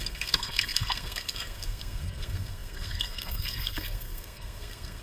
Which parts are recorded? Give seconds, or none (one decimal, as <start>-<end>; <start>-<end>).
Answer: none